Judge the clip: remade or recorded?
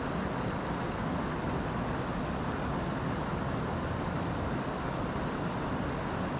recorded